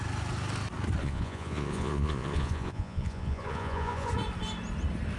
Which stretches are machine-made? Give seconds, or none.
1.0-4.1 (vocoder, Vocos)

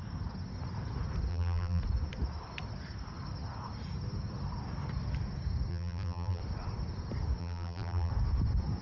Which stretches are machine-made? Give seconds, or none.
1.3-1.8 (vocoder, BigVGAN v2); 5.7-6.4; 7.4-8.1

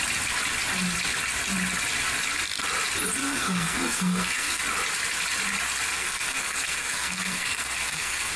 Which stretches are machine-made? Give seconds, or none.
3.2-4.6 (codec, SNAC); 5.9-8.4

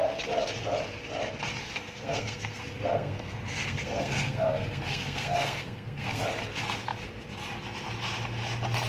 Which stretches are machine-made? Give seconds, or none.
1.6-6.2 (codec, SNAC)